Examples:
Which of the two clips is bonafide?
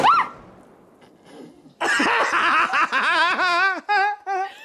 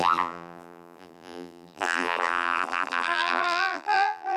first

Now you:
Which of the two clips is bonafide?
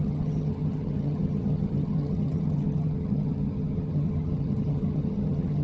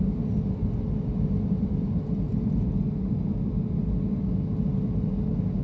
second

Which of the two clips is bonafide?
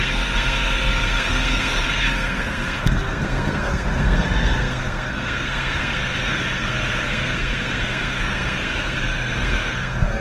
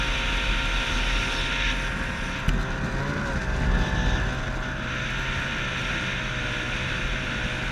second